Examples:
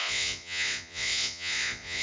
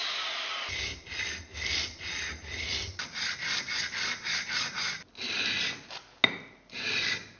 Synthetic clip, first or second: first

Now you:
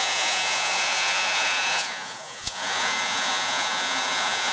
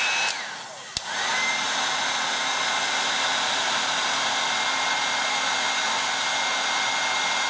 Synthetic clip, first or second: first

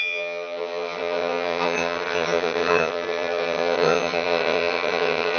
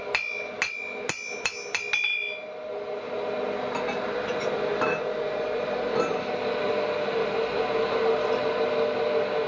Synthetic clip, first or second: first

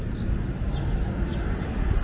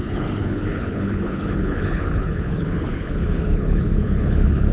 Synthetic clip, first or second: second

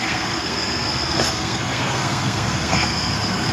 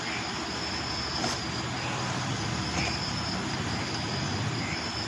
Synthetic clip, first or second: first